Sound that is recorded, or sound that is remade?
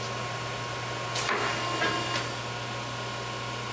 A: recorded